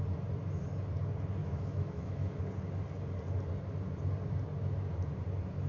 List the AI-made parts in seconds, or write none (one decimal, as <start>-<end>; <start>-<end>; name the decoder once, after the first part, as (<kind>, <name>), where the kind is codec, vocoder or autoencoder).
1.4-2.4 (autoencoder, DAC-VAE)